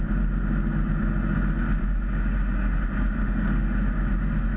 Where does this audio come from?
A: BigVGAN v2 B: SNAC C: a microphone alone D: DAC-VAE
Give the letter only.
C